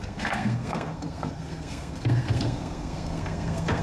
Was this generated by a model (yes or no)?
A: yes